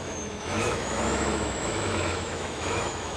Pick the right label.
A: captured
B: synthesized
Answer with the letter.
B